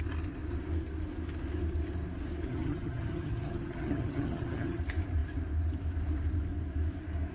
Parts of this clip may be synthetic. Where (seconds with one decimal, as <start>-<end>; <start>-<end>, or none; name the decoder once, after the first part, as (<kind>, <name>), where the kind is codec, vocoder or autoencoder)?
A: 2.5-4.8 (vocoder, HiFi-GAN)

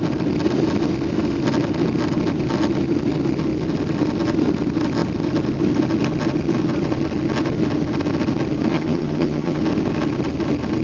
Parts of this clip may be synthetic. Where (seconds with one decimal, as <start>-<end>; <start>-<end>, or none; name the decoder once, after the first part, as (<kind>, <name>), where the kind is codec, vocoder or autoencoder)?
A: 8.7-9.6 (vocoder, HiFi-GAN)

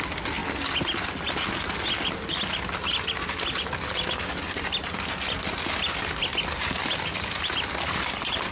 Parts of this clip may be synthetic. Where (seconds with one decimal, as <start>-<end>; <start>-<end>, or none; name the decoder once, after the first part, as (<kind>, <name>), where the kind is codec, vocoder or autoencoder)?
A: none

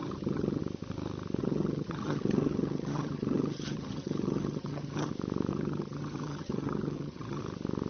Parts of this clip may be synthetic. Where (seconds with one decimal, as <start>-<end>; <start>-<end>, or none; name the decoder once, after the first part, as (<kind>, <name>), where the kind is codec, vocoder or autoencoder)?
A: 0.0-0.6 (vocoder, HiFi-GAN); 1.4-5.1; 5.5-7.4

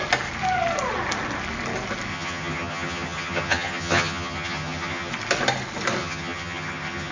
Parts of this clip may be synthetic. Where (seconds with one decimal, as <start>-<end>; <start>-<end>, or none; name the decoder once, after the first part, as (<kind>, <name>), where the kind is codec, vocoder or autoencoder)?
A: 2.1-5.1 (vocoder, HiFi-GAN); 6.0-7.1

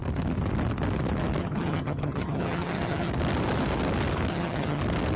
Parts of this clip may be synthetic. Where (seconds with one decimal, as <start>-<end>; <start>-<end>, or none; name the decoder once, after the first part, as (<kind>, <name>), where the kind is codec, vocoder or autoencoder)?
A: 1.4-3.1 (vocoder, HiFi-GAN); 4.3-4.8